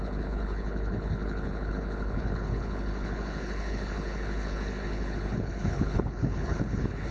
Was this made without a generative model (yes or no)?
no